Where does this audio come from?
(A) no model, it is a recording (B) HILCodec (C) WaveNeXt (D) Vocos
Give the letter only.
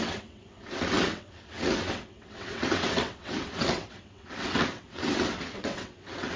C